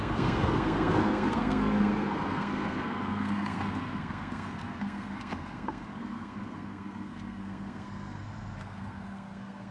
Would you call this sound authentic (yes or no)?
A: no